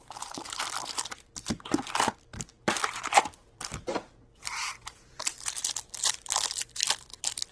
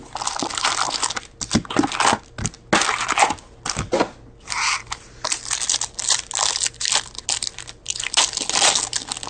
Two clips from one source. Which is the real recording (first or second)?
second